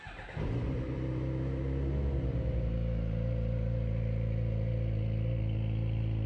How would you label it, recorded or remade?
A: recorded